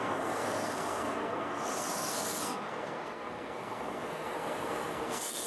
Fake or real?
fake